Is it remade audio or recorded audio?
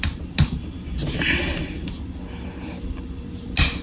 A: recorded